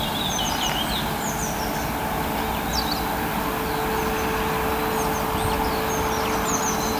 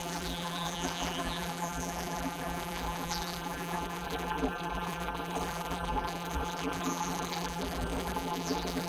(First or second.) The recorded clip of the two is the first